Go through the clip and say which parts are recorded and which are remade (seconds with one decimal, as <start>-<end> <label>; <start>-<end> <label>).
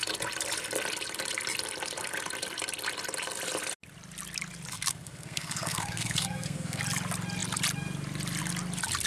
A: 0.0-4.7 recorded; 4.7-6.8 remade; 6.8-9.1 recorded